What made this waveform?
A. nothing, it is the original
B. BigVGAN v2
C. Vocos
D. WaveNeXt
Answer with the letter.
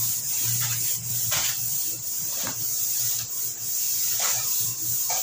B